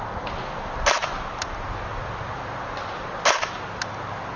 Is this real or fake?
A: real